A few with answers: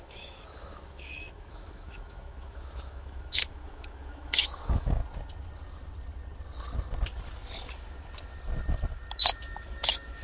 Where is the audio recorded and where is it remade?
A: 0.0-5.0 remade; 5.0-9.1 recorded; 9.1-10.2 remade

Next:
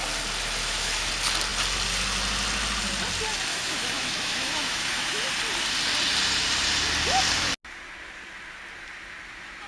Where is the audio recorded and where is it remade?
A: 0.0-0.6 recorded; 0.6-1.1 remade; 1.1-3.5 recorded; 3.5-5.3 remade; 5.3-9.7 recorded

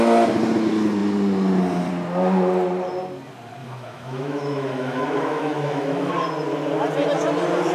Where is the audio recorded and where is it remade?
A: 0.0-3.6 recorded; 3.6-6.1 remade; 6.1-7.7 recorded

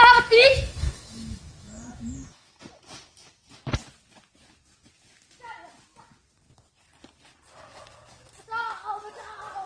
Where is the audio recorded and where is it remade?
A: 0.0-2.6 remade; 2.6-9.7 recorded